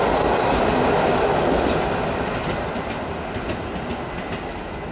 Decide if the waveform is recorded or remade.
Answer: recorded